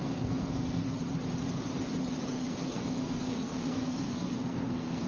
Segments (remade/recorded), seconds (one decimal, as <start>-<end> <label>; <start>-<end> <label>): 0.0-0.8 remade; 0.8-2.3 recorded; 2.3-5.1 remade